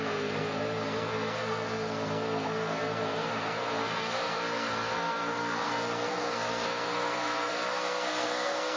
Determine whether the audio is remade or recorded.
remade